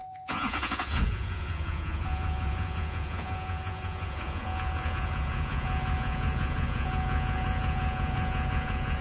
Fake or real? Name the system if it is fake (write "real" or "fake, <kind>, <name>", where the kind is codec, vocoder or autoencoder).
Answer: fake, vocoder, Vocos